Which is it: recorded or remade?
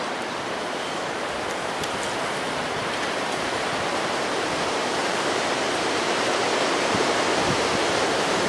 remade